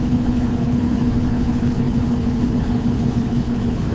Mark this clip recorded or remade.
remade